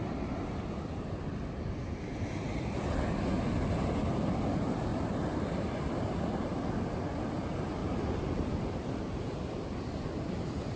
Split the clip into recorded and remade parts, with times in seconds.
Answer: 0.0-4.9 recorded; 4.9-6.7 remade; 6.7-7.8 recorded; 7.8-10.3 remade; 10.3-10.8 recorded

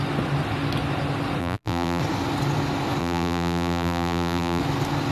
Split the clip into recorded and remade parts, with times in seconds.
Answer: 0.0-1.4 recorded; 1.4-2.0 remade; 2.0-3.0 recorded; 3.0-4.6 remade; 4.6-5.1 recorded

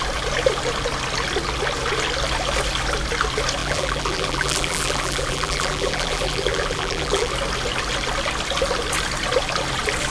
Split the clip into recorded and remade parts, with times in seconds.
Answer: 0.0-3.6 recorded; 3.6-7.3 remade; 7.3-10.1 recorded

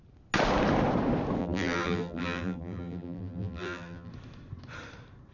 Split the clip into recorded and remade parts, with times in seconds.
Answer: 0.0-1.4 recorded; 1.4-4.1 remade; 4.1-5.3 recorded

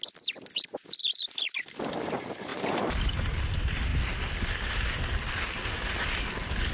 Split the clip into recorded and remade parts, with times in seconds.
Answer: 0.0-2.5 recorded; 2.5-3.5 remade; 3.5-6.7 recorded

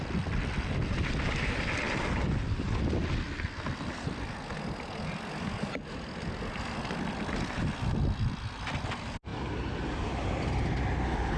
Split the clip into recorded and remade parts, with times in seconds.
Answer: 0.0-11.4 recorded